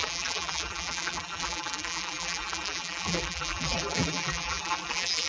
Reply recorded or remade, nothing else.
remade